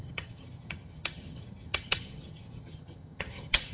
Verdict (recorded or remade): remade